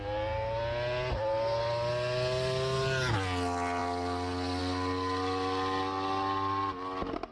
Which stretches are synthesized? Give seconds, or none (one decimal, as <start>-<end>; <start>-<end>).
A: none